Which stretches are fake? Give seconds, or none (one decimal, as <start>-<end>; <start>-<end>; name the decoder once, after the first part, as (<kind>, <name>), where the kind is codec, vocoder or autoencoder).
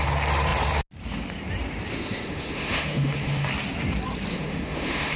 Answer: 1.9-3.5 (autoencoder, DAC-VAE); 4.3-5.2